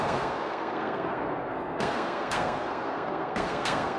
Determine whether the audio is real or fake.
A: fake